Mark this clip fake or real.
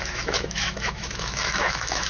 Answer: fake